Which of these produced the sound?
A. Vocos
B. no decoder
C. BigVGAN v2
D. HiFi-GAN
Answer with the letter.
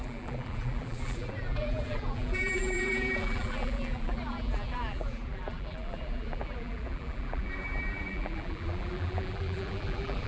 C